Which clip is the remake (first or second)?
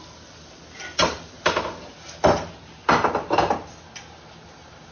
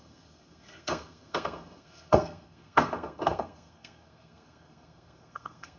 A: second